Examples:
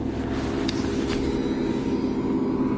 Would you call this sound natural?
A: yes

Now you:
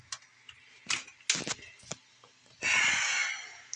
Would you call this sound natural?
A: yes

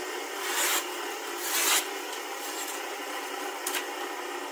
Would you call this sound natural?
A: yes